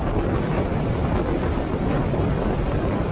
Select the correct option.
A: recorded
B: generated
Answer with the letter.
A